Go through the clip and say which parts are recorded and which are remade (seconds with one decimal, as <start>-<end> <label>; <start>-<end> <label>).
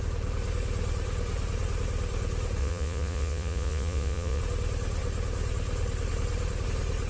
0.0-2.6 recorded; 2.6-4.4 remade; 4.4-7.1 recorded